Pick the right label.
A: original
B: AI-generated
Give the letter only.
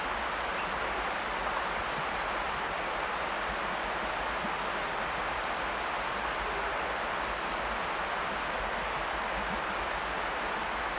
A